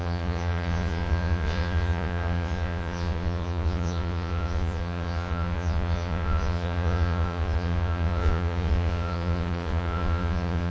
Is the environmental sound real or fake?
fake